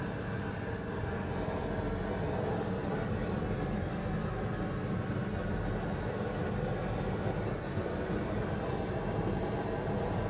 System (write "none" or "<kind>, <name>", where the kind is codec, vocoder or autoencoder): none